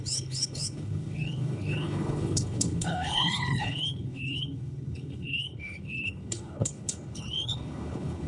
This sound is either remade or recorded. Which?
remade